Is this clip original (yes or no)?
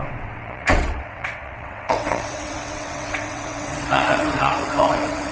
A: no